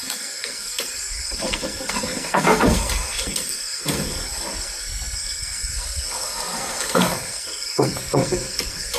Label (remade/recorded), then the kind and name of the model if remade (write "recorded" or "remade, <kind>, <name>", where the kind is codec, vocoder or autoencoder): remade, codec, SNAC